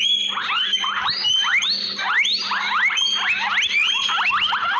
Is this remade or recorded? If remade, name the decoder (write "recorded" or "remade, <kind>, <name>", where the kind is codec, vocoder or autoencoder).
recorded